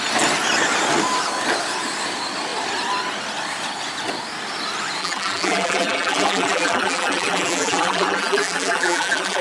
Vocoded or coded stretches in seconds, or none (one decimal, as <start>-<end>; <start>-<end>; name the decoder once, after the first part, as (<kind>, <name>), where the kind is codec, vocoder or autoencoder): 5.0-9.4 (vocoder, BigVGAN v2)